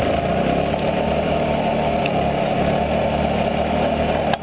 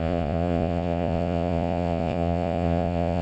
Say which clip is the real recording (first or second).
first